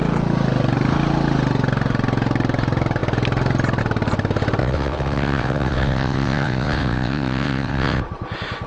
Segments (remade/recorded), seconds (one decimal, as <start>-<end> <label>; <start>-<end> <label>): 0.0-4.6 recorded; 4.6-8.0 remade; 8.0-8.7 recorded